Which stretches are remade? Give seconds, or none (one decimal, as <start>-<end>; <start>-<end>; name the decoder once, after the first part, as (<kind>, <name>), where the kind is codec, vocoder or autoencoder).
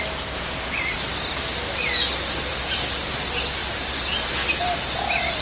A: none